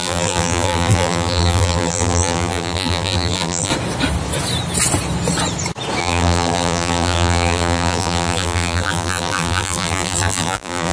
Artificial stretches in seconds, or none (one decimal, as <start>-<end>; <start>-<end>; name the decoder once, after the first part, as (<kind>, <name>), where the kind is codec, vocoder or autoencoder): 0.0-3.7 (vocoder, BigVGAN v2); 6.0-10.9